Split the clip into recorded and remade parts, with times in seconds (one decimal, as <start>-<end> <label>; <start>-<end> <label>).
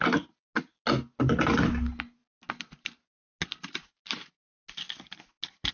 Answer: 0.0-5.7 recorded